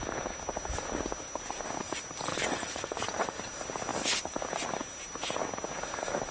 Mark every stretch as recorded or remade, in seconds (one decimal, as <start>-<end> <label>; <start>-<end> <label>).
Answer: 0.0-2.3 recorded; 2.3-3.4 remade; 3.4-6.3 recorded